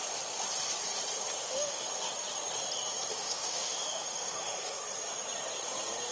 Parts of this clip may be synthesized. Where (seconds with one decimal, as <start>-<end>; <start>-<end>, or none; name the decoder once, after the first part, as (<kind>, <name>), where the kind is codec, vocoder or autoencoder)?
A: 1.4-1.9 (autoencoder, DAC-VAE); 3.1-4.8